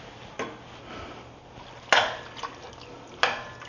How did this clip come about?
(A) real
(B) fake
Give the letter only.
A